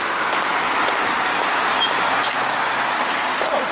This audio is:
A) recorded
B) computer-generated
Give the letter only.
A